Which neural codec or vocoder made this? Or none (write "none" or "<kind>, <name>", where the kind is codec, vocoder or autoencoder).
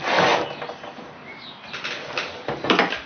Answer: none